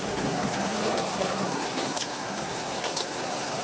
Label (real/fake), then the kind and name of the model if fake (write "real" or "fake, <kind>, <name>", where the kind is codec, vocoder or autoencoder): fake, codec, SNAC